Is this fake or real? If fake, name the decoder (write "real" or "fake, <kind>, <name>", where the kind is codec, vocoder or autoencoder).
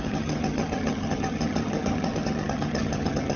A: fake, vocoder, HiFi-GAN